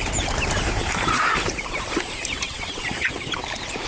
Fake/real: fake